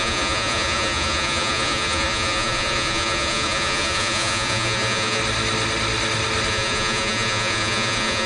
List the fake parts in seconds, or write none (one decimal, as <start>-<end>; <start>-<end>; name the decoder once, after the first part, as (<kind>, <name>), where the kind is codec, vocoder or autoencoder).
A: 0.0-5.2 (vocoder, Vocos); 6.5-8.3